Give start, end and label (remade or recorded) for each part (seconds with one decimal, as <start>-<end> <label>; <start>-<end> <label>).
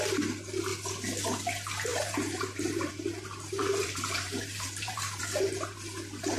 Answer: 0.0-1.9 recorded; 1.9-2.9 remade; 2.9-3.6 recorded; 3.6-5.2 remade; 5.2-6.4 recorded